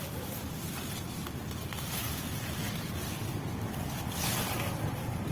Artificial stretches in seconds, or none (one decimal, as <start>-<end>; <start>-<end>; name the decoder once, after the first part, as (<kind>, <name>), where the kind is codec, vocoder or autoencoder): 0.0-0.7 (vocoder, BigVGAN v2); 2.0-5.3